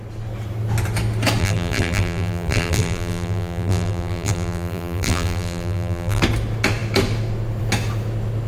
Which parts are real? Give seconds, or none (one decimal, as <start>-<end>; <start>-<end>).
0.0-1.4; 6.2-8.5